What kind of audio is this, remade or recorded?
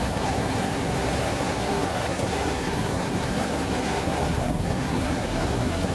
remade